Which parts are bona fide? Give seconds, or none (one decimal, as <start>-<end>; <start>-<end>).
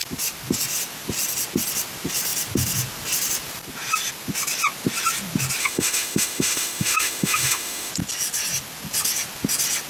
0.0-5.6; 7.9-9.9